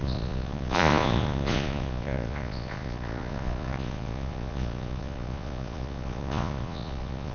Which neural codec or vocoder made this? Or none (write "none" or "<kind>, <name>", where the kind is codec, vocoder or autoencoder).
vocoder, Vocos